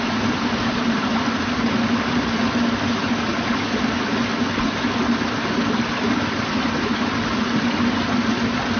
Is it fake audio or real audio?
real